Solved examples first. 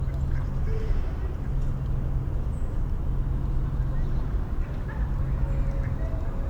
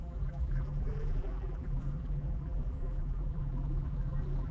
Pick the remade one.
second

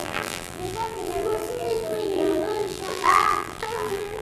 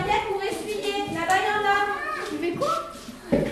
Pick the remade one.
first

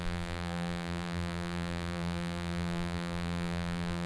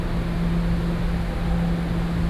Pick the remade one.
first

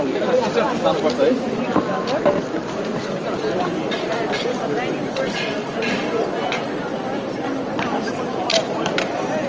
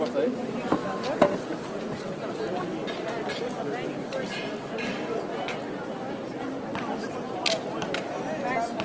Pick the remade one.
first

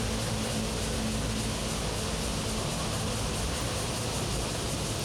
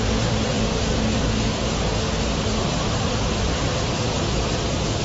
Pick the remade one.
second